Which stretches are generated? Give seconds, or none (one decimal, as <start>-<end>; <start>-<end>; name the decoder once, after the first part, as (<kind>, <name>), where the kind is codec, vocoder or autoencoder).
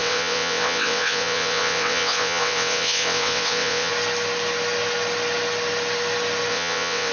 0.0-3.9 (vocoder, WaveNeXt); 6.5-7.1